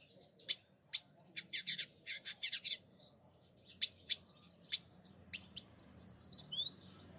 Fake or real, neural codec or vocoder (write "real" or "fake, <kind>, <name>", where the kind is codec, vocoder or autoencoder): fake, vocoder, BigVGAN v2